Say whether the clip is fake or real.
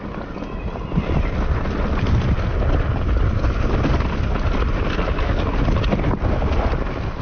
real